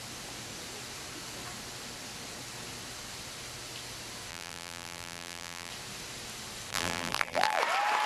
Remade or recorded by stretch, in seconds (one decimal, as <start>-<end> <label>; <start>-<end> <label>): 0.0-4.3 recorded; 4.3-5.7 remade; 5.7-6.7 recorded; 6.7-7.6 remade; 7.6-8.1 recorded